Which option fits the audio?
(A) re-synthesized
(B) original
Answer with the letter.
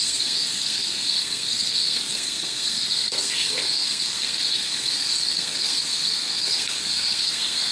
A